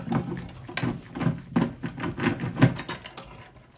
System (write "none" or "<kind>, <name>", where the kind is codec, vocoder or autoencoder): none